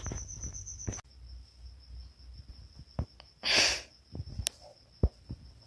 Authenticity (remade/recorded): recorded